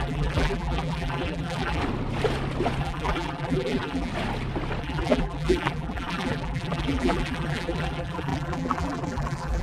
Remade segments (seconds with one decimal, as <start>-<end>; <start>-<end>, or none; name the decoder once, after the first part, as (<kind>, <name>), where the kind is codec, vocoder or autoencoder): 0.0-1.8 (vocoder, BigVGAN v2); 2.8-4.1; 4.8-9.6